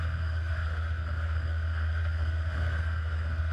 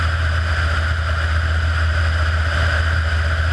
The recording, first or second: second